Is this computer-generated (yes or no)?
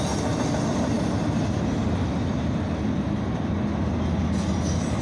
no